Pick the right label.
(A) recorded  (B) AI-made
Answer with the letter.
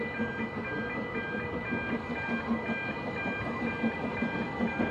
A